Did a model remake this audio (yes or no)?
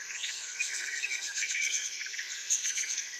yes